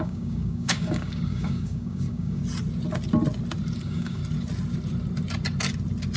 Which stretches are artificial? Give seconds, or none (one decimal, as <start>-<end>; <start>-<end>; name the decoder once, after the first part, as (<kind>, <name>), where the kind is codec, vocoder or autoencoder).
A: 0.0-2.4 (codec, DAC); 3.8-4.2